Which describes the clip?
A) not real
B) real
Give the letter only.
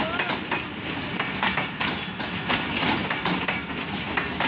B